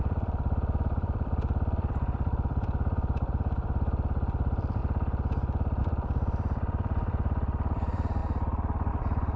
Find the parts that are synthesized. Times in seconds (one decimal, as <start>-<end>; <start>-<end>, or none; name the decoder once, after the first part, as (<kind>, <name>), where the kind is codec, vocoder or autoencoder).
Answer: 0.0-4.8 (vocoder, BigVGAN v2); 5.8-9.4